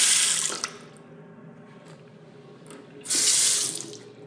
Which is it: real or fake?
real